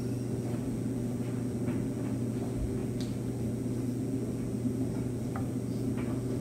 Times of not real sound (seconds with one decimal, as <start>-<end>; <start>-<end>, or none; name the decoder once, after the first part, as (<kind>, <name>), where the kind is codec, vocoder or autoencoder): none